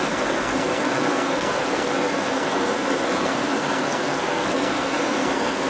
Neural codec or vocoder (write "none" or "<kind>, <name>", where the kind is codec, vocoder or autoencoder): codec, SNAC